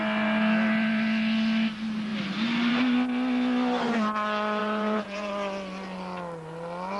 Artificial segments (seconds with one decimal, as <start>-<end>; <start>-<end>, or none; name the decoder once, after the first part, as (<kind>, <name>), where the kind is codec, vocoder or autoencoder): 4.6-5.3 (vocoder, Vocos)

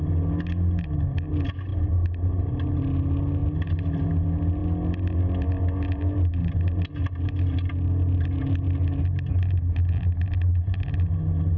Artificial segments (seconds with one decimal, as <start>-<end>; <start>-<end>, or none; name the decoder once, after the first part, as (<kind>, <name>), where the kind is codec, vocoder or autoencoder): none